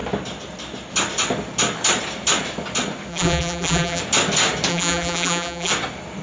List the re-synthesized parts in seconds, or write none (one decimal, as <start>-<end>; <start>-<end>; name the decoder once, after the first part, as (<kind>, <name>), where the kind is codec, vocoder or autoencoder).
3.1-4.0 (vocoder, BigVGAN v2); 4.7-5.7